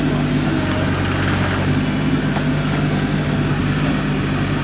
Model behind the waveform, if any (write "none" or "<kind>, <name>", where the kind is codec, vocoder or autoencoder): none